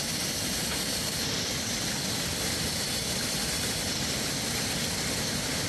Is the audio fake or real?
real